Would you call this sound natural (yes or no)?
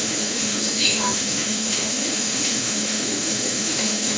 no